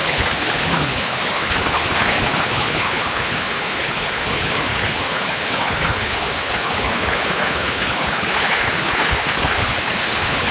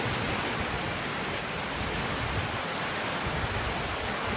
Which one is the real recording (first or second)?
second